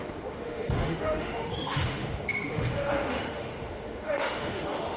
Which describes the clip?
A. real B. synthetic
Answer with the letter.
B